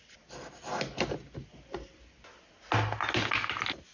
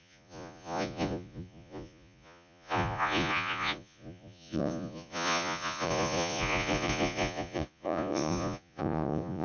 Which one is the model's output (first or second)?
second